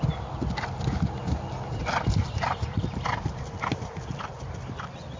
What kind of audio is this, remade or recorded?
recorded